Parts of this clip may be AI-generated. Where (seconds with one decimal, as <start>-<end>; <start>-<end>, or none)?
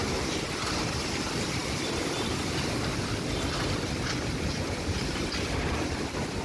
1.6-5.2